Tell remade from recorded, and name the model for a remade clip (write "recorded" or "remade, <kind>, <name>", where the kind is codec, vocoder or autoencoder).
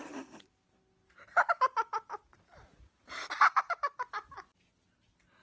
recorded